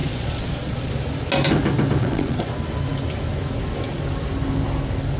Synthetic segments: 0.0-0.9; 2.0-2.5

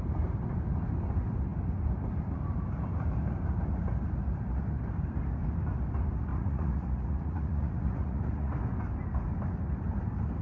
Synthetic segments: 6.3-8.5